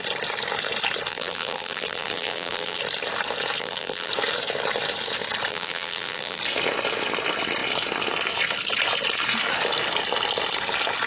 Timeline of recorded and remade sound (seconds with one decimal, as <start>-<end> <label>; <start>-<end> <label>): 0.0-1.1 recorded; 1.1-2.8 remade; 2.8-3.6 recorded; 3.6-4.1 remade; 4.1-5.5 recorded; 5.5-6.4 remade; 6.4-11.1 recorded